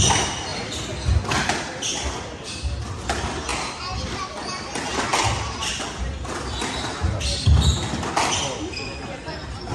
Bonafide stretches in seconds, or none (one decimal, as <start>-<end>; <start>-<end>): 0.0-9.7